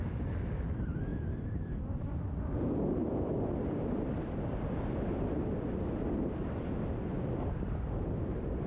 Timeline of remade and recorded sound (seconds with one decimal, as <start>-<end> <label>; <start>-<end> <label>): 0.0-6.4 remade; 6.4-6.9 recorded; 6.9-8.7 remade